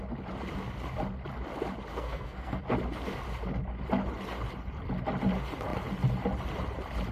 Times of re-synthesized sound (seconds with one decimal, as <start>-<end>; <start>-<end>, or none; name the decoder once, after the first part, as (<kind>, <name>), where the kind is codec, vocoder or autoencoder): 1.9-2.6 (codec, SNAC)